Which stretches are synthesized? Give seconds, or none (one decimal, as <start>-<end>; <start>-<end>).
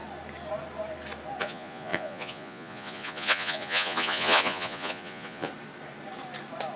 1.4-5.5